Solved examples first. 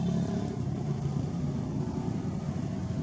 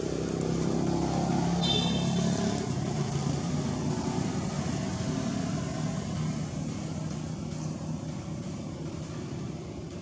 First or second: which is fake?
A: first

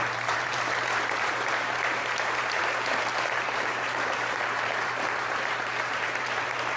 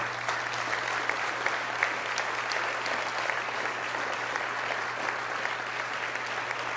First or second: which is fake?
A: first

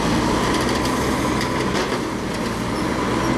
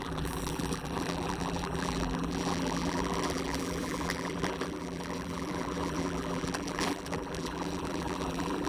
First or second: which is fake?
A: second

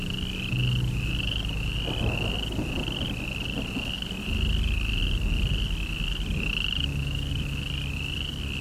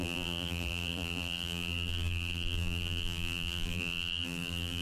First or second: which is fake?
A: second